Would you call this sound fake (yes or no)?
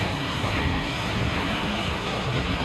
yes